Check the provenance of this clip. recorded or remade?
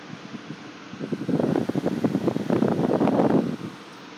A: recorded